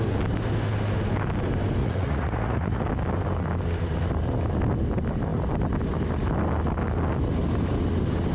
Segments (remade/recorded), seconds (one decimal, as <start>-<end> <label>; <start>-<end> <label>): 0.0-1.8 recorded; 1.8-2.8 remade; 2.8-8.3 recorded